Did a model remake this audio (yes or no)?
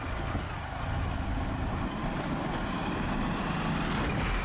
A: no